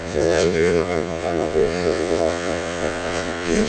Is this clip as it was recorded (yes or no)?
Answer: no